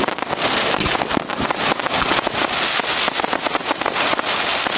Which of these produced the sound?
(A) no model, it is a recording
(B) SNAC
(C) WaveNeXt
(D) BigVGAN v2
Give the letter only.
A